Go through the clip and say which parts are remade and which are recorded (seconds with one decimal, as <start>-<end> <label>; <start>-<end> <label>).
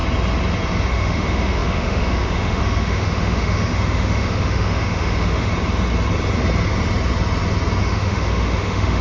0.0-0.9 recorded; 0.9-5.5 remade; 5.5-7.8 recorded; 7.8-9.0 remade